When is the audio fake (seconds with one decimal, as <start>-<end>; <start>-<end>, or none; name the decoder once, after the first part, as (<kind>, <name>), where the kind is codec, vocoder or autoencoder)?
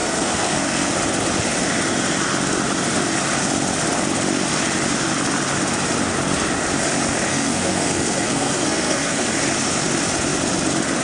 0.0-0.9 (codec, SNAC); 7.3-9.3